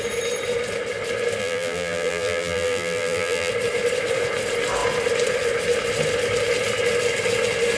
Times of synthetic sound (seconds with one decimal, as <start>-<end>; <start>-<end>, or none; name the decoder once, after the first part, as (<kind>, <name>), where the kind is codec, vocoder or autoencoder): 1.4-3.5 (vocoder, BigVGAN v2)